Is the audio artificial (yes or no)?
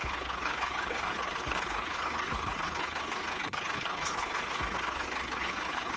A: yes